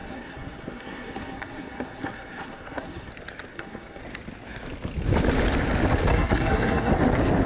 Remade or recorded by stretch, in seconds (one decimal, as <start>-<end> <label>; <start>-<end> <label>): 0.0-3.1 remade; 3.1-3.5 recorded; 3.5-4.0 remade; 4.0-6.1 recorded; 6.1-6.9 remade; 6.9-7.5 recorded